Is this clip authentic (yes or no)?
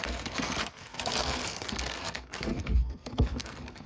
no